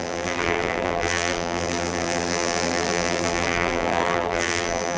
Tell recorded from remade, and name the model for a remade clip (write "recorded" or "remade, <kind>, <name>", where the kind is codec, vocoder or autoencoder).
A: remade, vocoder, BigVGAN v2